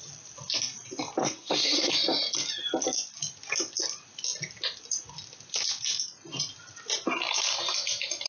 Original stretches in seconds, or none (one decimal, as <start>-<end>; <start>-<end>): 0.0-1.2; 1.9-8.3